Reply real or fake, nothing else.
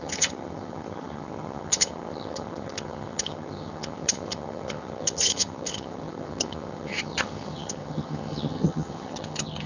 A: fake